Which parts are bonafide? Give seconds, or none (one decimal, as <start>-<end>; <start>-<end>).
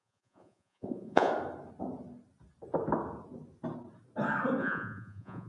1.3-4.6